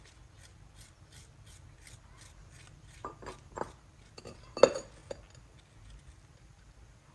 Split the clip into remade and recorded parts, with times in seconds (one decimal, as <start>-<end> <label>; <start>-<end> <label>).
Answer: 0.0-7.1 recorded